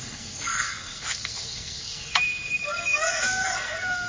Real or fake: fake